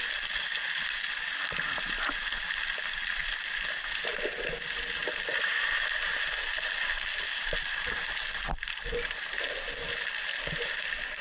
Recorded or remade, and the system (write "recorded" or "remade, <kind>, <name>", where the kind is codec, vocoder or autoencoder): recorded